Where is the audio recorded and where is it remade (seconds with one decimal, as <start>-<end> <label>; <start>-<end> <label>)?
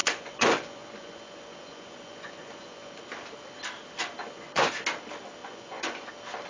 0.0-3.0 remade; 3.0-4.2 recorded; 4.2-4.7 remade; 4.7-5.4 recorded; 5.4-6.1 remade; 6.1-6.5 recorded